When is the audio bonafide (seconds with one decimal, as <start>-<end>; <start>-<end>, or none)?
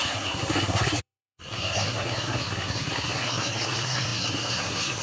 none